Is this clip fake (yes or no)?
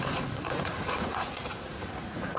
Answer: yes